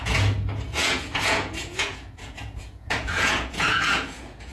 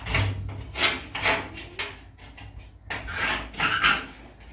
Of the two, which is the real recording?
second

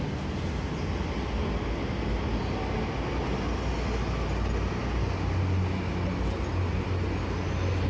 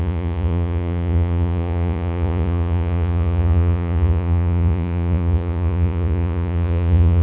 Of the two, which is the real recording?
first